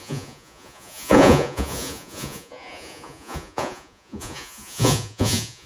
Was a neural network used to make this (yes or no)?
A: yes